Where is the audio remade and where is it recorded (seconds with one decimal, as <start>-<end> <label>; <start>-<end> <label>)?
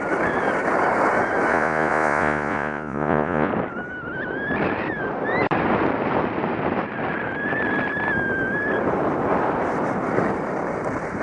0.0-1.5 recorded; 1.5-3.5 remade; 3.5-11.2 recorded